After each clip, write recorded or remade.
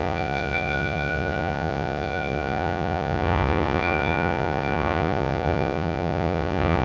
remade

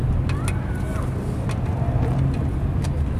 recorded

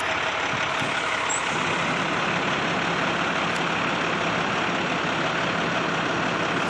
recorded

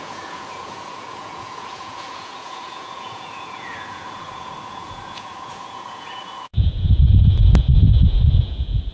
remade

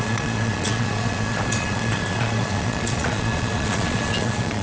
remade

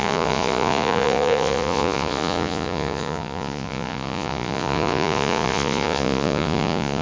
remade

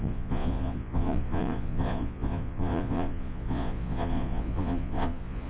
remade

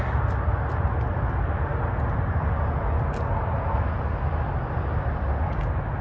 recorded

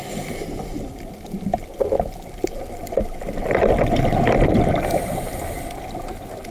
recorded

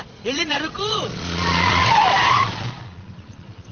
remade